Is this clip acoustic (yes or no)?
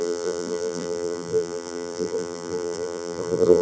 no